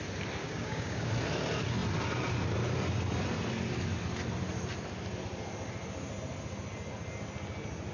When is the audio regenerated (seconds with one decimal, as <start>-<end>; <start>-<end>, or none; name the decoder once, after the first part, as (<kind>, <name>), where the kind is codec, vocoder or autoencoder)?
0.4-1.1 (codec, DAC)